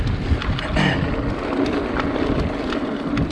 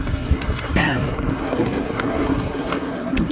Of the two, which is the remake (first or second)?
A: second